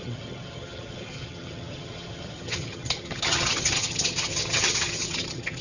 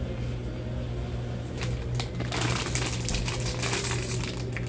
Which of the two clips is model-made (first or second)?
first